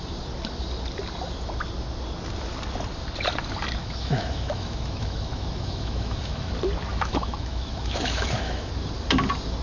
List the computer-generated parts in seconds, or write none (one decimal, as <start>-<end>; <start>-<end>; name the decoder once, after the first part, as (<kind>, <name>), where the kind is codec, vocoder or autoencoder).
3.8-6.5 (autoencoder, DAC-VAE); 6.9-8.7